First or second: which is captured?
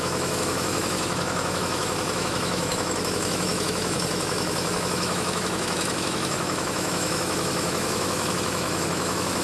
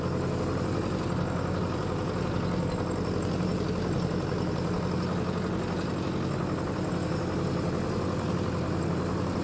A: second